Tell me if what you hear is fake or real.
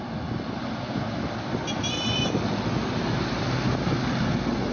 real